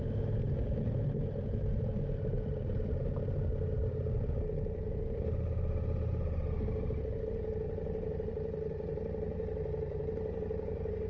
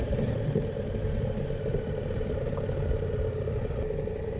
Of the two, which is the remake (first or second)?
second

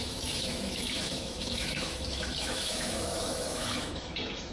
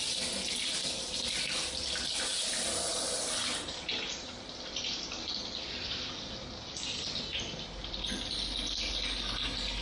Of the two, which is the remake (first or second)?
first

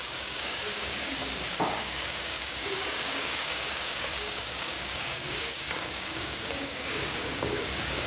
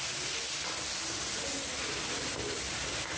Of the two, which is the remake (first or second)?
first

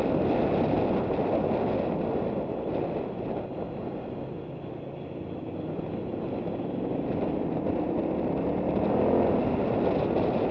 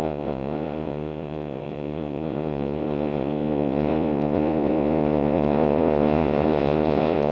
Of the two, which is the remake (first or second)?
second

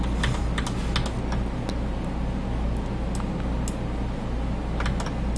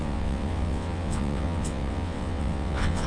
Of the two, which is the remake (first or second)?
second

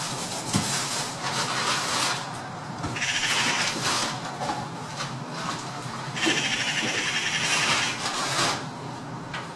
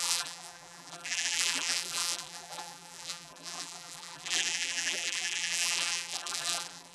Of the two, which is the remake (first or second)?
second